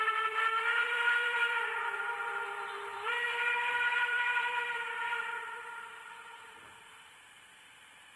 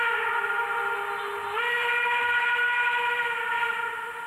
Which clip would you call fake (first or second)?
first